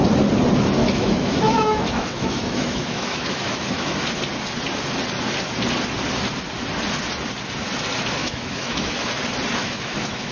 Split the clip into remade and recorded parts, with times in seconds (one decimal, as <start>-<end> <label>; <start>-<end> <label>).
0.0-0.8 recorded; 0.8-4.0 remade; 4.0-8.2 recorded; 8.2-9.0 remade; 9.0-9.6 recorded; 9.6-10.3 remade